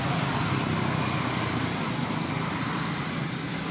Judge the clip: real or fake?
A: real